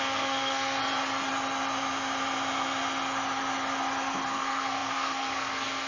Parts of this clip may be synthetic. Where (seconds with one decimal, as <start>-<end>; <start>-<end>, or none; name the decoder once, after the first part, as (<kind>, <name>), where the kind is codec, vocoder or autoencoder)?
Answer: 0.0-0.8 (codec, SNAC); 4.3-5.9